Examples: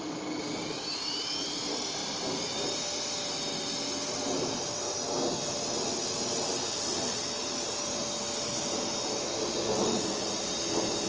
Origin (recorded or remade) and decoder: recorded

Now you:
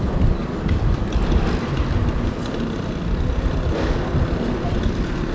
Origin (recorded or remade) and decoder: recorded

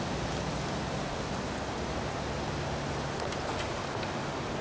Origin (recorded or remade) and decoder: recorded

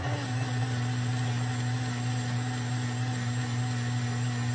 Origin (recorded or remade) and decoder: recorded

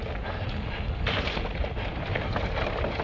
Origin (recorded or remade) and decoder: recorded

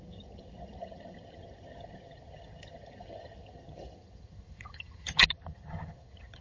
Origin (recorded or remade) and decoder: remade, vocoder, HiFi-GAN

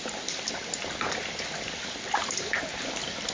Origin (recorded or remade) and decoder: recorded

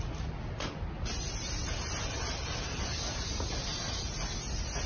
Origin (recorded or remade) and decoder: recorded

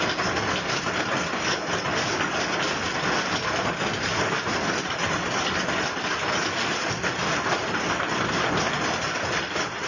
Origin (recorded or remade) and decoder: recorded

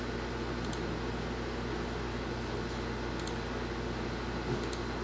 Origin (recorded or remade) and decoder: recorded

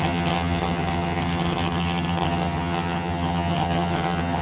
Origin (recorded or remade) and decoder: remade, vocoder, HiFi-GAN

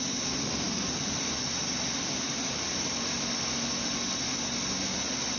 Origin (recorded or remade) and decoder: recorded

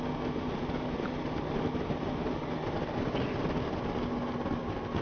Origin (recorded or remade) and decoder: recorded